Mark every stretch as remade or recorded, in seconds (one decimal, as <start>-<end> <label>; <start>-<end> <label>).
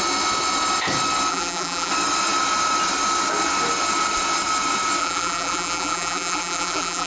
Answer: 0.0-1.3 recorded; 1.3-1.9 remade; 1.9-5.0 recorded; 5.0-7.1 remade